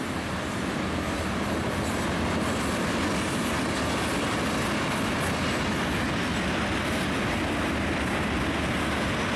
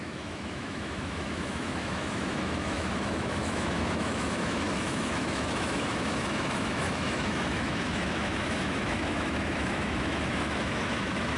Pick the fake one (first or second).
second